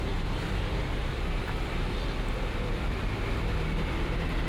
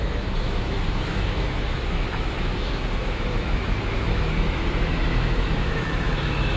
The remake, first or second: second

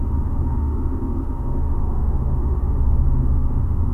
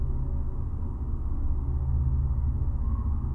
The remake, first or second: first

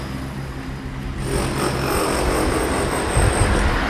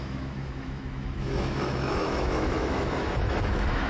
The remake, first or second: second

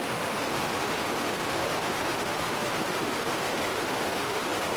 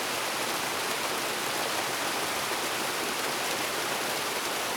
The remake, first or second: first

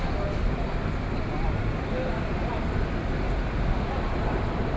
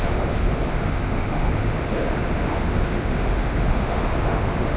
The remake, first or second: second